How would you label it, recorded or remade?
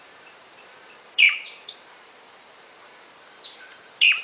remade